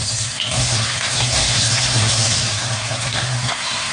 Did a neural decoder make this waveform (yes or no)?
yes